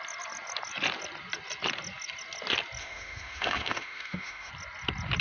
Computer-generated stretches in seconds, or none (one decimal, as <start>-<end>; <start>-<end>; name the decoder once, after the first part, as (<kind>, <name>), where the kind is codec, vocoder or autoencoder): 2.8-4.5 (autoencoder, DAC-VAE)